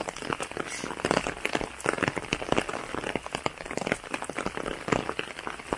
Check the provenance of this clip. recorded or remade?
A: recorded